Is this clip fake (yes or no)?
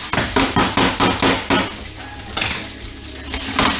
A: no